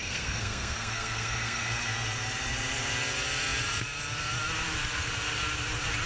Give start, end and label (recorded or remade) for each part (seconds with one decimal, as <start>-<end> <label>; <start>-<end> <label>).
0.0-1.7 remade; 1.7-6.1 recorded